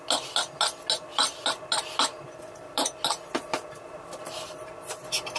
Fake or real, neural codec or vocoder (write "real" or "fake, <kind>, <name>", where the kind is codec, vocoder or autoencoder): real